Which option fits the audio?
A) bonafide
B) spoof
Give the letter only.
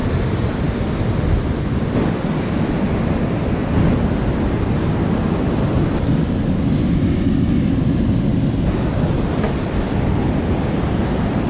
A